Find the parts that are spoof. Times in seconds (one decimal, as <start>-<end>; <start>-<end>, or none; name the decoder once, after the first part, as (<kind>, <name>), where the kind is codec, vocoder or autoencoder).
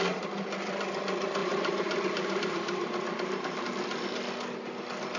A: 1.4-3.6 (vocoder, BigVGAN v2)